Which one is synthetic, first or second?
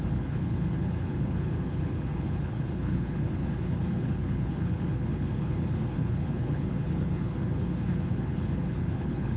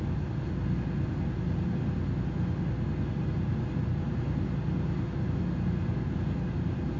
first